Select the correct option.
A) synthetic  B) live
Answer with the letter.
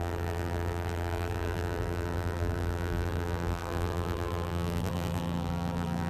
A